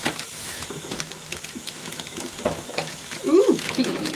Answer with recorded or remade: remade